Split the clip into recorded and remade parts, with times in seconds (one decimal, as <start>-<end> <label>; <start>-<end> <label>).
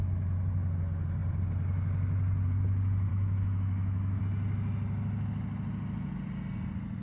0.0-3.1 recorded; 3.1-4.2 remade; 4.2-7.0 recorded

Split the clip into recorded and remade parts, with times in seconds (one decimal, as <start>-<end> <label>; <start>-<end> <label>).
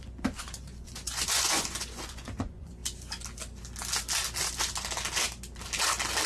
0.0-2.8 remade; 2.8-6.3 recorded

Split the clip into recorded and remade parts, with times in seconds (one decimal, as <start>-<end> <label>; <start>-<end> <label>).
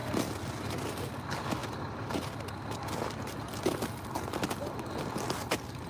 0.0-5.9 recorded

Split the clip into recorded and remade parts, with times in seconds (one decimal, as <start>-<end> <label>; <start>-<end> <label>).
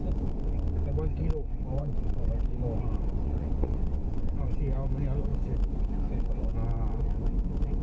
0.0-1.8 recorded; 1.8-2.3 remade; 2.3-3.1 recorded; 3.1-4.6 remade; 4.6-7.8 recorded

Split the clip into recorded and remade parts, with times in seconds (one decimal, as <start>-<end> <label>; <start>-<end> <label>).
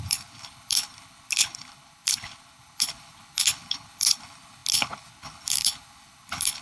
0.0-6.6 remade